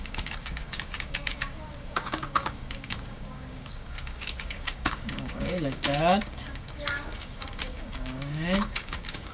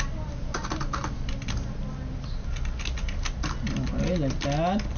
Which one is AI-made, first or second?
first